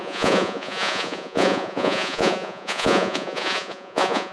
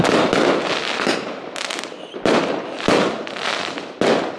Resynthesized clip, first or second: first